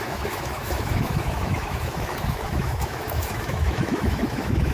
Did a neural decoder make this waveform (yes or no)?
yes